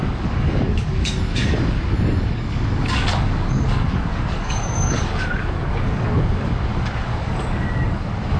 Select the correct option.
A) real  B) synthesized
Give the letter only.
B